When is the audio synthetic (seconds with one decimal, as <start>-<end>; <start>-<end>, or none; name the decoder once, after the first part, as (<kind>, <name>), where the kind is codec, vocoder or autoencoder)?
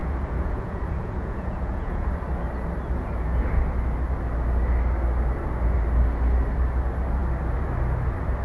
0.0-2.1 (vocoder, Vocos)